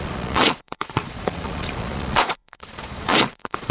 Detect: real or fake fake